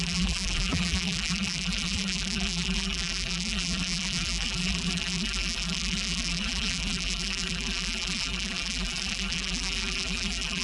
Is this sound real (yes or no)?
no